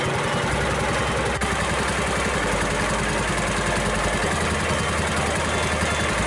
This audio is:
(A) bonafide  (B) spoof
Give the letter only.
A